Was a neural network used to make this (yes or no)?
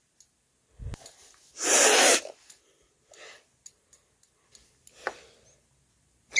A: no